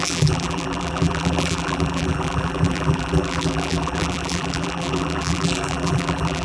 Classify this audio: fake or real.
fake